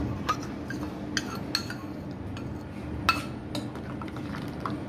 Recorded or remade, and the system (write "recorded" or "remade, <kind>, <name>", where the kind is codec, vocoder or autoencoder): recorded